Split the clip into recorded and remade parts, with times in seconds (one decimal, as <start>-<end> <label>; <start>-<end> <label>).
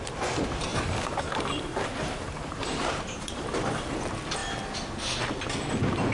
0.0-0.7 recorded; 0.7-4.0 remade; 4.0-6.1 recorded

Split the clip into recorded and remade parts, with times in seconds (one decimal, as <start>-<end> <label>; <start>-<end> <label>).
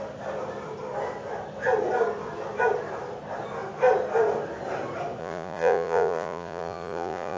0.0-5.2 recorded; 5.2-7.4 remade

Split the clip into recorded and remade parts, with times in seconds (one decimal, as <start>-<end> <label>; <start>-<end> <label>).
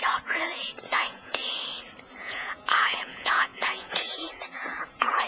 0.0-1.4 remade; 1.4-2.2 recorded; 2.2-5.3 remade